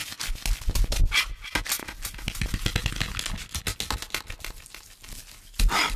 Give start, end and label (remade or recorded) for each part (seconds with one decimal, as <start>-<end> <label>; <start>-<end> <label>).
0.0-6.0 recorded